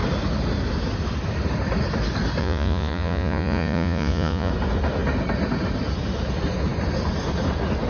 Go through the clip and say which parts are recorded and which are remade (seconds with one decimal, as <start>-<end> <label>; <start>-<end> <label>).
0.0-2.4 recorded; 2.4-4.5 remade; 4.5-7.9 recorded